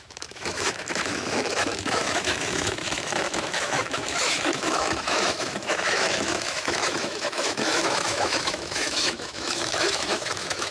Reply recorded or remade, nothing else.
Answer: remade